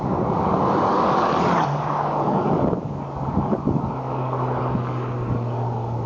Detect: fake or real fake